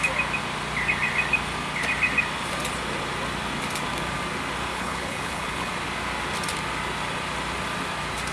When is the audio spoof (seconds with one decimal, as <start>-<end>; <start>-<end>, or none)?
4.7-5.7